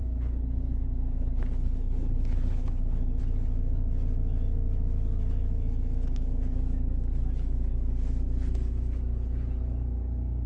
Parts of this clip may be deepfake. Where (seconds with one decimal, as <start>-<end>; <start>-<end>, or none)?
0.0-3.2